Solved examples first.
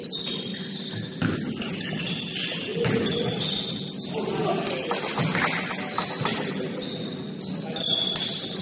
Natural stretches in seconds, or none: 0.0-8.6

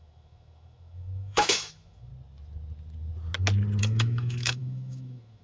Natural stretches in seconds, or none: 2.1-3.8

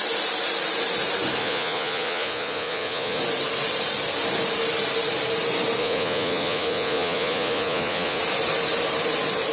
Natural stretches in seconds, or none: 0.0-1.4; 3.2-5.8; 8.2-9.5

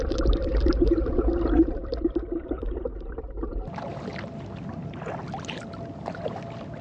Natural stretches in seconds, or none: 4.1-6.8

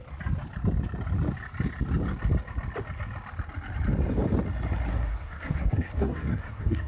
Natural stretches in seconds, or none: 0.0-4.9